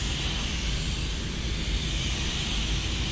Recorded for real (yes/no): yes